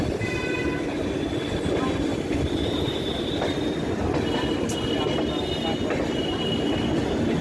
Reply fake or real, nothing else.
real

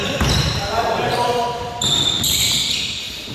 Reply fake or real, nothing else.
fake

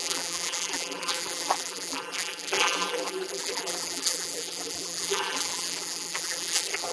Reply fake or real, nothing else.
fake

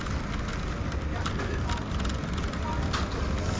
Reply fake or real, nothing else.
real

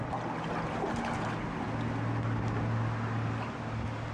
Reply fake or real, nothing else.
real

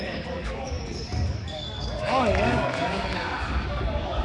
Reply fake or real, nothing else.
fake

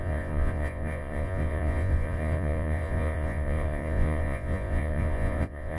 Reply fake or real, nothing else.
fake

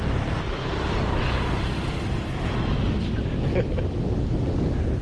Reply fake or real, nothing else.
real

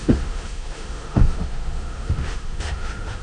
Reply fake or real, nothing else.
fake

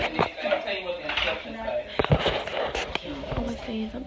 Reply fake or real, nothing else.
real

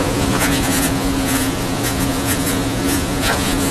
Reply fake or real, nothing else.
fake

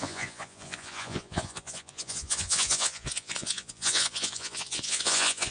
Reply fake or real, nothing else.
fake